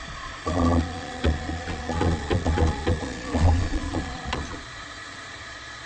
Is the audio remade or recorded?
remade